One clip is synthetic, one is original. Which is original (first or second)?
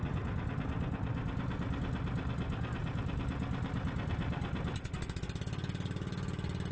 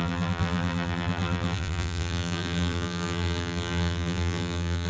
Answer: first